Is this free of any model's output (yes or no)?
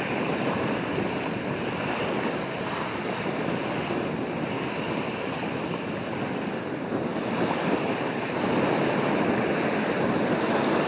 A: yes